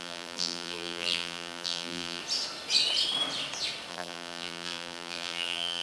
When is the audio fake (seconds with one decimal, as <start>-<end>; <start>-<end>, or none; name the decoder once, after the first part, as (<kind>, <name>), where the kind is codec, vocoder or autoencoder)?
0.0-2.2 (vocoder, BigVGAN v2); 3.9-5.8